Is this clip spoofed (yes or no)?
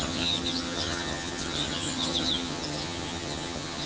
yes